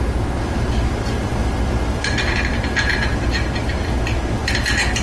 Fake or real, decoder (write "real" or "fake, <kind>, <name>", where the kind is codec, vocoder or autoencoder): fake, vocoder, BigVGAN v2